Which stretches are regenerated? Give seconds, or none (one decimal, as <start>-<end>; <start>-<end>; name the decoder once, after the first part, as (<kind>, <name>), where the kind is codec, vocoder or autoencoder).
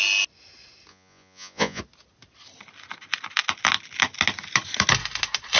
0.9-1.8 (vocoder, Vocos)